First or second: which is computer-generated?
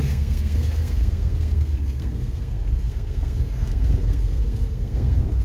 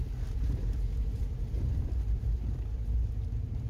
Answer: first